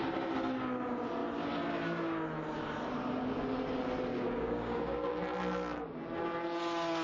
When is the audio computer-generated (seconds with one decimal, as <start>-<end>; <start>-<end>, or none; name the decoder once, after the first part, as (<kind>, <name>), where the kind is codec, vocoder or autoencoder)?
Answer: 4.1-5.2 (codec, DAC)